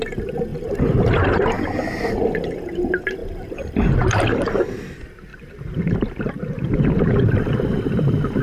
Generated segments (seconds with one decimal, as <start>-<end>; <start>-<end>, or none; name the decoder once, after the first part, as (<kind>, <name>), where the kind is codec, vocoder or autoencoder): 0.5-1.0 (vocoder, BigVGAN v2); 3.2-4.3; 5.3-7.6